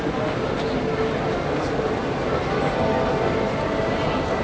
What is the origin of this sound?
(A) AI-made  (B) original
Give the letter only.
B